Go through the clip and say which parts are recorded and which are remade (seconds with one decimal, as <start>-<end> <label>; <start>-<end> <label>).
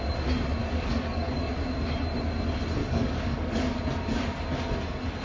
0.0-0.6 recorded; 0.6-1.5 remade; 1.5-2.8 recorded; 2.8-3.8 remade; 3.8-5.2 recorded